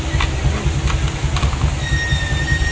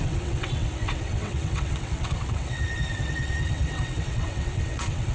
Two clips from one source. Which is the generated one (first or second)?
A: second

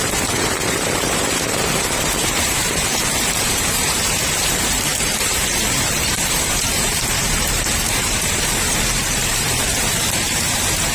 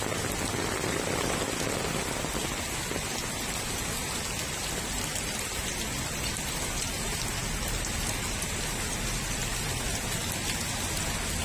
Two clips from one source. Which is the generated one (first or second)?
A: first